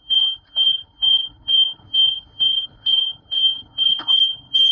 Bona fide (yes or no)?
no